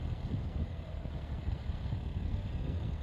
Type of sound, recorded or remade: remade